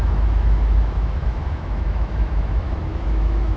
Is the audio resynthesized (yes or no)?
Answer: yes